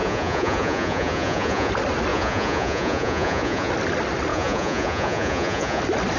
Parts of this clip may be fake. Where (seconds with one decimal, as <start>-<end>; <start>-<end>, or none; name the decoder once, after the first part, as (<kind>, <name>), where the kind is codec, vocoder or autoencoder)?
0.0-1.7 (vocoder, Vocos); 2.1-3.7; 4.3-5.8